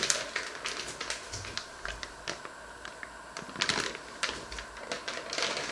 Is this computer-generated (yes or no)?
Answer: no